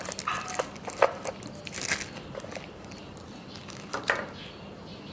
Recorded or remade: recorded